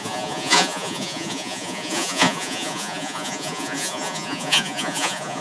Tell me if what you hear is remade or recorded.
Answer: remade